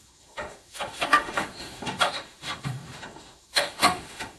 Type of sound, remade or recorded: remade